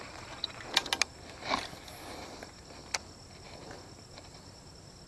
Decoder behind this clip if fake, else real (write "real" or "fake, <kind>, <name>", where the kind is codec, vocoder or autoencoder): real